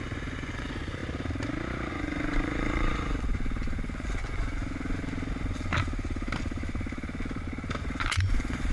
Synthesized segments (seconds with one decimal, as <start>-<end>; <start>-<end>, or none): 0.0-1.0; 1.9-4.6; 5.3-5.7; 7.8-8.7